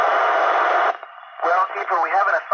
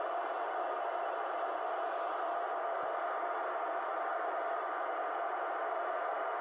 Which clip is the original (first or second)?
second